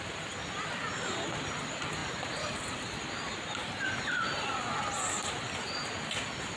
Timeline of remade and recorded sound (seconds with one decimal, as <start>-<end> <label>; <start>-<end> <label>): 0.0-6.6 recorded